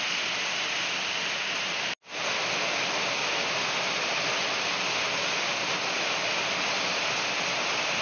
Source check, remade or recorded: recorded